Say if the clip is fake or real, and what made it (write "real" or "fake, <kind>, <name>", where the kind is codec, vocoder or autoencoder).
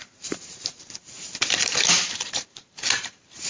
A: fake, vocoder, BigVGAN v2